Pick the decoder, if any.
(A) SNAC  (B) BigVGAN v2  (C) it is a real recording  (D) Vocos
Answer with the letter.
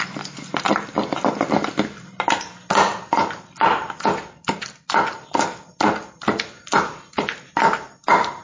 C